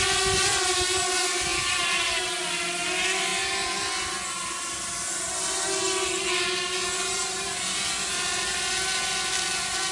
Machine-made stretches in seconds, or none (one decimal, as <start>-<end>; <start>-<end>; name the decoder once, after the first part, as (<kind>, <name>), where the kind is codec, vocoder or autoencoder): 1.5-2.2 (vocoder, BigVGAN v2); 7.0-8.6